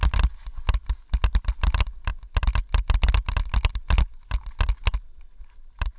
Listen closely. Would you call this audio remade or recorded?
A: recorded